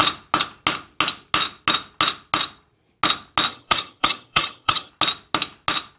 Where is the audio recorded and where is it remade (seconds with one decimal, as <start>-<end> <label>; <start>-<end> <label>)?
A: 0.0-3.5 recorded; 3.5-4.9 remade; 4.9-6.0 recorded